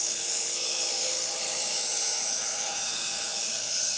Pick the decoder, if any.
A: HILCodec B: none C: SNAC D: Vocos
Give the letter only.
A